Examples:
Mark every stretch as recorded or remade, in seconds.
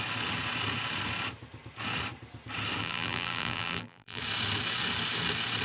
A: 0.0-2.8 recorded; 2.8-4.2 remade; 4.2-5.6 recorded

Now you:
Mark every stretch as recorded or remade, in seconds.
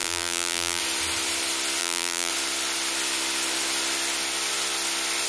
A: 0.0-0.8 remade; 0.8-1.8 recorded; 1.8-2.3 remade; 2.3-5.3 recorded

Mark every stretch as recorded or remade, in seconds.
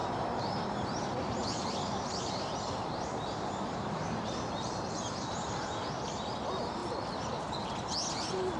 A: 0.0-0.6 remade; 0.6-1.4 recorded; 1.4-5.5 remade; 5.5-8.6 recorded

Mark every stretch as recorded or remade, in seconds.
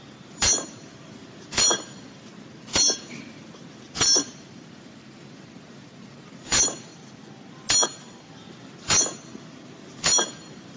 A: 0.0-6.9 remade; 6.9-8.3 recorded; 8.3-10.8 remade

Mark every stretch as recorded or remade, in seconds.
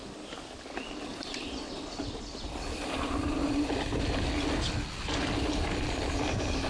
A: 0.0-4.0 remade; 4.0-6.7 recorded